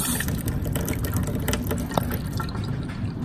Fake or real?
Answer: fake